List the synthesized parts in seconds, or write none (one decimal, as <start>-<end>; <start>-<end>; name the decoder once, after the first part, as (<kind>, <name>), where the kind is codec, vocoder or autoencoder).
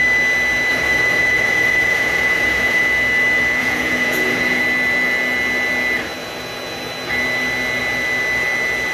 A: 0.7-2.8 (vocoder, Vocos); 3.6-4.6